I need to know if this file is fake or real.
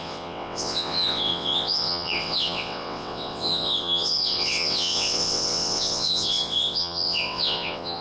fake